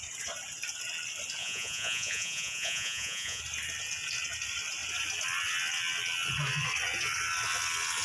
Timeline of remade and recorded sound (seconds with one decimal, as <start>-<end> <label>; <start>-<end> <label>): 0.0-1.4 recorded; 1.4-3.4 remade; 3.4-8.0 recorded